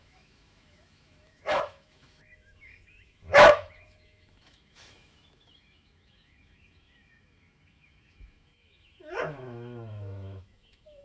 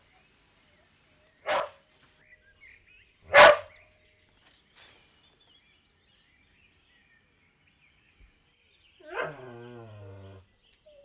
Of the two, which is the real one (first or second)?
second